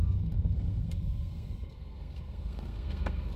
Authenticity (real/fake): fake